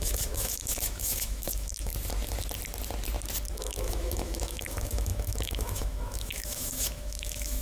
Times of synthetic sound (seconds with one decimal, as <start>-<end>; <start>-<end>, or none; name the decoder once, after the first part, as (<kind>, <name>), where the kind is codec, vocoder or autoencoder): 0.0-1.9 (autoencoder, DAC-VAE); 3.5-7.6